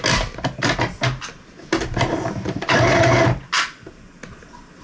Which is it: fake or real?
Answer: real